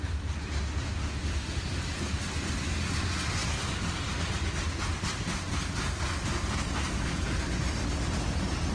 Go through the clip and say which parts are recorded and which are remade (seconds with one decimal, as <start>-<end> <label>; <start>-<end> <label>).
0.0-8.7 recorded